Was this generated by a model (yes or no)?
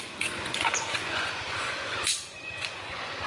yes